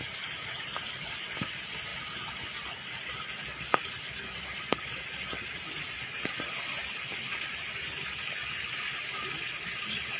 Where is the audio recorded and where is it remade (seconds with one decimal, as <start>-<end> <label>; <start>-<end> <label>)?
0.0-10.2 recorded